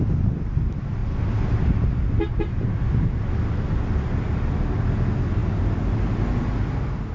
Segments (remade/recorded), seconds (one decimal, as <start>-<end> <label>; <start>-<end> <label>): 0.0-7.1 recorded